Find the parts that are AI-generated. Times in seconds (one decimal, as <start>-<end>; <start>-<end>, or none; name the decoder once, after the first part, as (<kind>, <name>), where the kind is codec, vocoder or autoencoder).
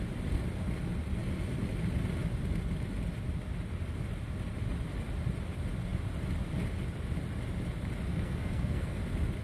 8.1-9.0 (codec, SNAC)